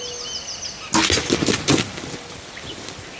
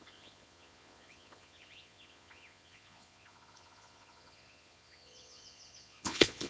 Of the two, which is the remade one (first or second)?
second